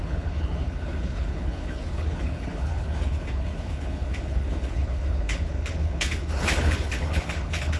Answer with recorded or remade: remade